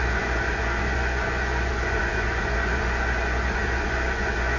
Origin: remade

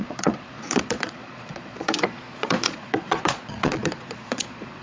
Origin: remade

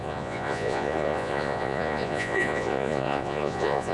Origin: remade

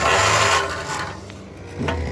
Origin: recorded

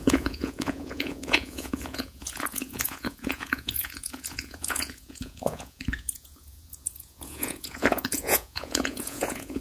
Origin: remade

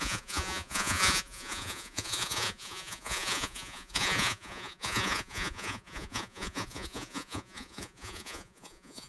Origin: remade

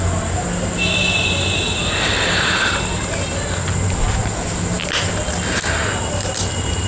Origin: recorded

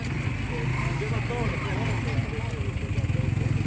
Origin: recorded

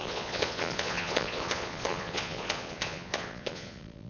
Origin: remade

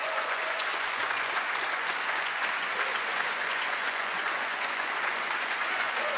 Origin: remade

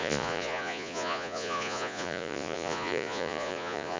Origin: remade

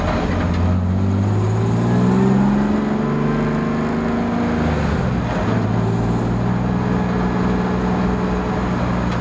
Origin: recorded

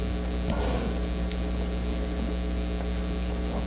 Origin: recorded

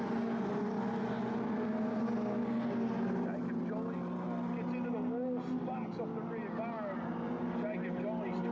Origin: recorded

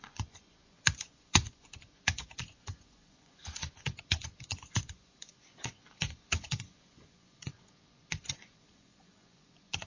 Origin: remade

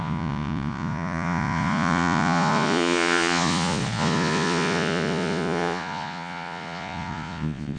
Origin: remade